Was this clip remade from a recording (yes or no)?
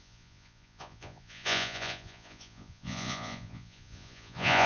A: yes